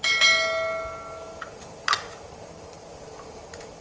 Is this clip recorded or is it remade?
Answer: recorded